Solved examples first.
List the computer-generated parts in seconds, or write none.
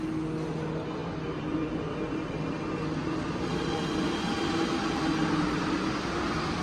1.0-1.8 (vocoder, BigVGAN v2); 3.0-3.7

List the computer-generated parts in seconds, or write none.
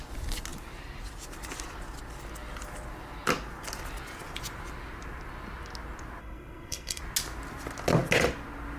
6.2-7.0 (codec, SNAC)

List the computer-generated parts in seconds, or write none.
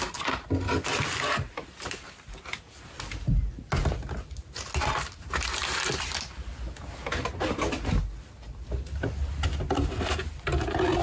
none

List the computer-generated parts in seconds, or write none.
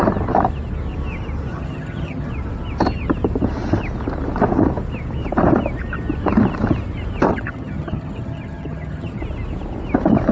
1.5-2.3 (vocoder, HiFi-GAN); 7.3-9.2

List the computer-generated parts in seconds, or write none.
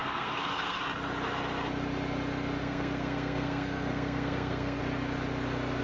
0.0-0.8 (codec, SNAC); 2.6-4.8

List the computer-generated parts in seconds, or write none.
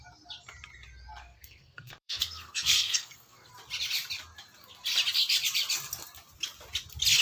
1.2-3.5 (codec, SNAC)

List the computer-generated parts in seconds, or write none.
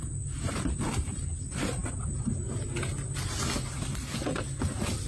none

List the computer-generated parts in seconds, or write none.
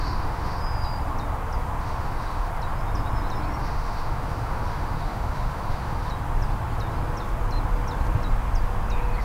0.0-0.6 (autoencoder, DAC-VAE); 1.8-2.5; 3.6-6.1